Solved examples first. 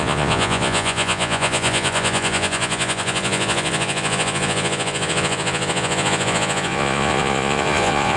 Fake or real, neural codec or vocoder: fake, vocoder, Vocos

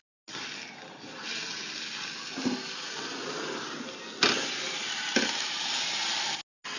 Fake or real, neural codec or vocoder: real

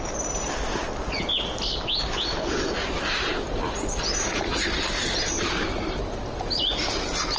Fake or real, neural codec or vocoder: real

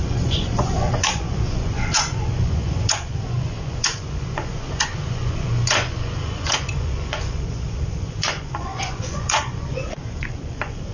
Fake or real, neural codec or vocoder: fake, vocoder, Vocos